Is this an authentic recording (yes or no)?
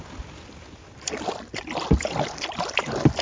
yes